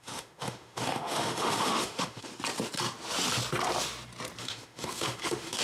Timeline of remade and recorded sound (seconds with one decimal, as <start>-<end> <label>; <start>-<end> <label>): 0.0-2.3 remade; 2.3-4.4 recorded; 4.4-5.6 remade